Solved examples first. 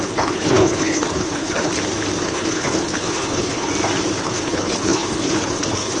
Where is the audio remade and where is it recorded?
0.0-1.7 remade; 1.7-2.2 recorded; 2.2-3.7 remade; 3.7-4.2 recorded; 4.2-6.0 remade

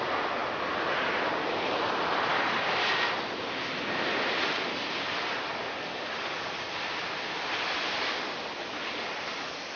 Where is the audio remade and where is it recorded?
0.0-9.8 recorded

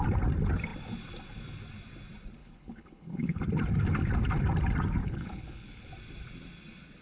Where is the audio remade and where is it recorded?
0.0-2.4 recorded; 2.4-3.4 remade; 3.4-5.0 recorded; 5.0-5.9 remade; 5.9-7.0 recorded

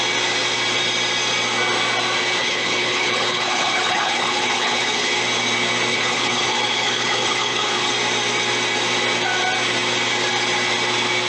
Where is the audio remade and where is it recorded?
0.0-2.4 recorded; 2.4-5.1 remade; 5.1-5.9 recorded; 5.9-7.9 remade; 7.9-11.3 recorded

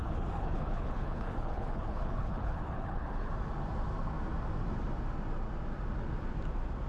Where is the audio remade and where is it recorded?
0.0-3.3 remade; 3.3-6.9 recorded

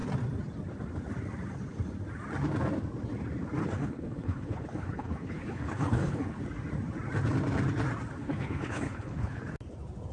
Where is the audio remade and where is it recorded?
0.0-3.6 recorded; 3.6-6.4 remade; 6.4-8.2 recorded; 8.2-9.4 remade; 9.4-10.1 recorded

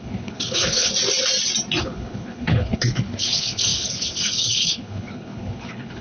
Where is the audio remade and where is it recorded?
0.0-0.9 remade; 0.9-1.8 recorded; 1.8-6.0 remade